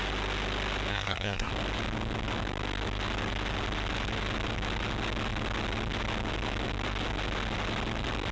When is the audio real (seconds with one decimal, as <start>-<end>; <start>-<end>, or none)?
0.0-0.9; 1.5-8.3